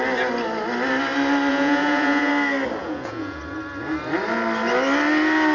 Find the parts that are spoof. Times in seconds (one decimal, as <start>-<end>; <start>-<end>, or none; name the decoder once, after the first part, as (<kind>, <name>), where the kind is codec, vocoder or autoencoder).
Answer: 1.5-2.3 (vocoder, Vocos); 2.8-3.4